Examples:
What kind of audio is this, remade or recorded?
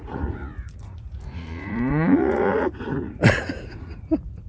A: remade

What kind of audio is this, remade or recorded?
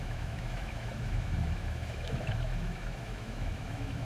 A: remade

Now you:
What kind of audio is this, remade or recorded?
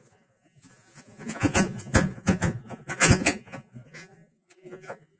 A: remade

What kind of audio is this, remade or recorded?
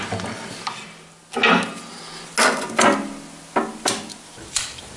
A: recorded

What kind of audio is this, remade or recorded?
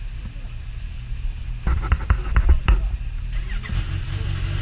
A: recorded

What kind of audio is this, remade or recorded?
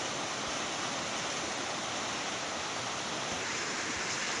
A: recorded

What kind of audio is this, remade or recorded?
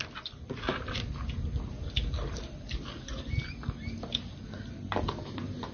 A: recorded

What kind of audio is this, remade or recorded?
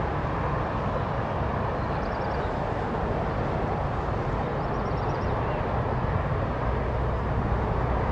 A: recorded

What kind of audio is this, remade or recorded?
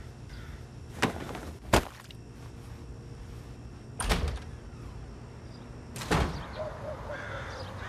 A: recorded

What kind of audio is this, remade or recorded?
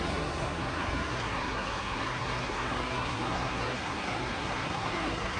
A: remade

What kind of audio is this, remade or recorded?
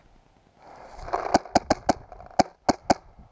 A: recorded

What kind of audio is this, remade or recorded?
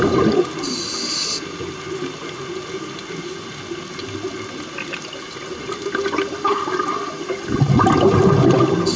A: recorded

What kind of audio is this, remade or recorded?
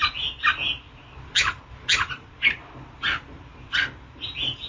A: recorded